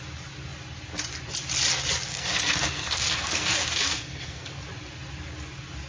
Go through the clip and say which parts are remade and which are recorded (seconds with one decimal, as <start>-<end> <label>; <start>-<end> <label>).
0.0-2.1 recorded; 2.1-4.6 remade; 4.6-5.9 recorded